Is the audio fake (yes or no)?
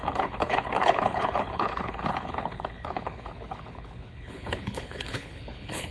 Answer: yes